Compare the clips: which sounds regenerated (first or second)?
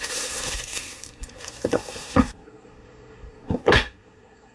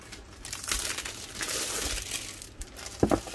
first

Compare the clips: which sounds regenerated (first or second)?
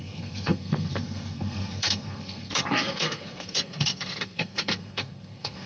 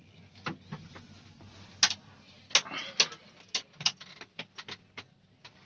first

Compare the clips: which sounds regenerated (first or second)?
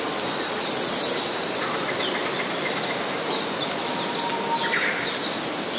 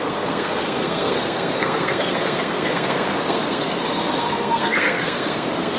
second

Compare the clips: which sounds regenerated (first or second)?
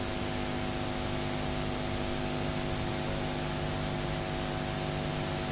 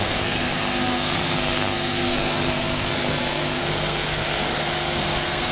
second